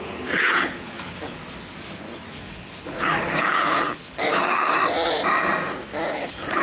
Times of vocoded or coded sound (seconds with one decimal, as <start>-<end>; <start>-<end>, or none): 0.0-1.4; 2.3-4.8; 6.1-6.6